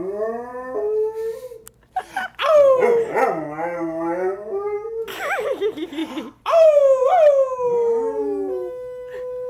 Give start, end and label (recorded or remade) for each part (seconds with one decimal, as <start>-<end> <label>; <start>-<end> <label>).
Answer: 0.0-6.0 recorded; 6.0-6.8 remade; 6.8-9.5 recorded